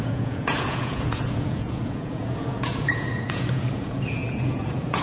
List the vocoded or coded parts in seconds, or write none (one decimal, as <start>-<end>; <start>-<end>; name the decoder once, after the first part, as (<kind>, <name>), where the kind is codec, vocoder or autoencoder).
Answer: 0.0-5.0 (vocoder, Vocos)